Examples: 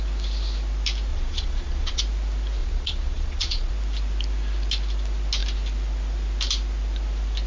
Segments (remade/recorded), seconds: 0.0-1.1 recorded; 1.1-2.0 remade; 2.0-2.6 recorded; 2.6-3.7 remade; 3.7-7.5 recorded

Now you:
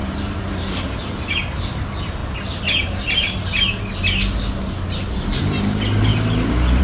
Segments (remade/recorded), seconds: 0.0-1.3 remade; 1.3-6.8 recorded

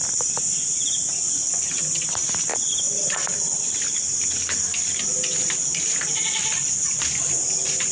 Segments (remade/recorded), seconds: 0.0-2.5 recorded; 2.5-4.9 remade; 4.9-7.9 recorded